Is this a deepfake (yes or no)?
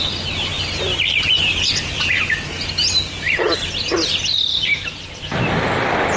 no